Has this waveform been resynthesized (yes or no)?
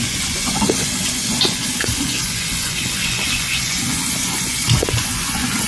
yes